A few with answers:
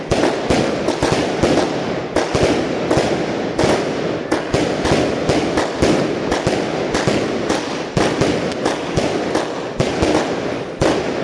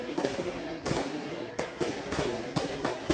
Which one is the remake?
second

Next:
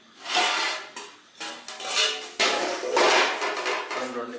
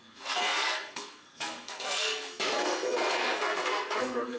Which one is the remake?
second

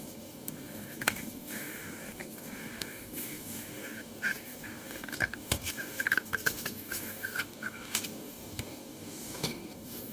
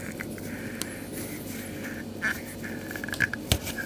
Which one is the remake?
first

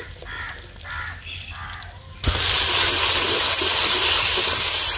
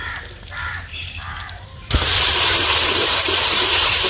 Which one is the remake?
second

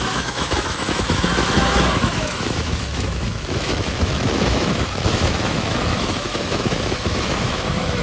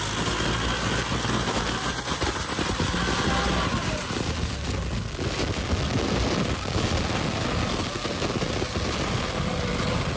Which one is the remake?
first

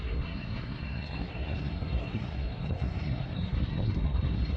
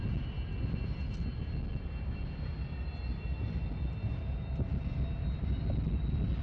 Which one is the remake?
first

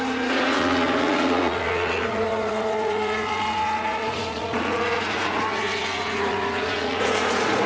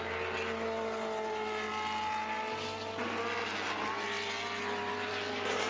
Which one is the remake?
first